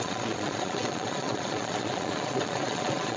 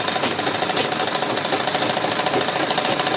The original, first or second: second